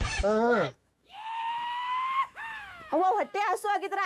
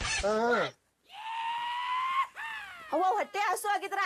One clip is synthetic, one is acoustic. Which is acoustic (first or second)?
second